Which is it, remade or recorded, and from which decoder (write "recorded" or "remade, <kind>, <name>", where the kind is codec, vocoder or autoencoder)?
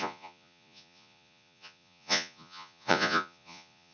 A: remade, vocoder, Vocos